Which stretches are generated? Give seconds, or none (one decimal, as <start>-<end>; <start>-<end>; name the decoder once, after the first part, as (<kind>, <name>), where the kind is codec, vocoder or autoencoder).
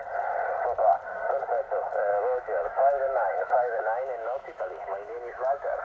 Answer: 2.1-5.8 (autoencoder, DAC-VAE)